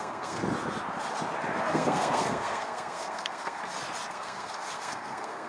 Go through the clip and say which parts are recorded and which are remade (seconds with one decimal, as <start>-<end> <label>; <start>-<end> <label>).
0.0-0.4 remade; 0.4-1.6 recorded; 1.6-3.6 remade; 3.6-4.1 recorded; 4.1-5.5 remade